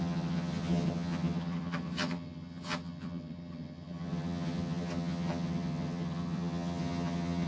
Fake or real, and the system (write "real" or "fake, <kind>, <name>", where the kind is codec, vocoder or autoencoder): fake, vocoder, HiFi-GAN